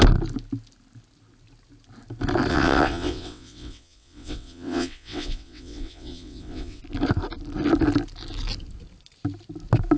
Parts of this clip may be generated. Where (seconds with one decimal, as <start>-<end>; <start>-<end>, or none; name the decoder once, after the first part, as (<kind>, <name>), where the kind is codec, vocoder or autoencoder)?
2.5-6.8 (vocoder, WaveNeXt)